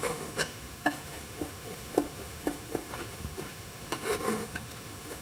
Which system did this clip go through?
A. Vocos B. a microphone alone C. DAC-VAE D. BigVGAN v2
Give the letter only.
C